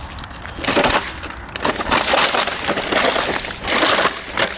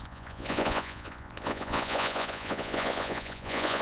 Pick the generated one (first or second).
second